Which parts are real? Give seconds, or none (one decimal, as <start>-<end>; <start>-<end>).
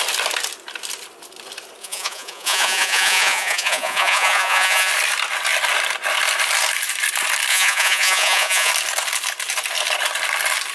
0.0-1.8; 4.9-7.5; 8.7-10.7